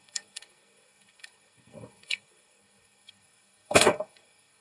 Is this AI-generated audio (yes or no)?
yes